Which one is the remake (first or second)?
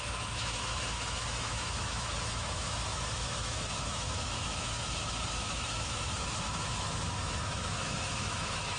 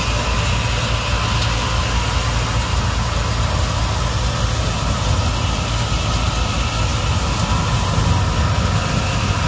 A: first